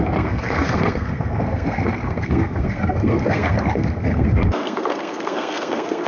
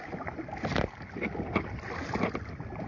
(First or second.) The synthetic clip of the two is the first